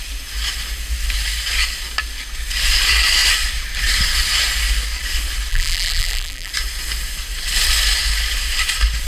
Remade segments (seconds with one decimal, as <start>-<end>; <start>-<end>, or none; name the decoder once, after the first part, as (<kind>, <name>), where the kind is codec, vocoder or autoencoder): 5.5-6.5 (vocoder, BigVGAN v2)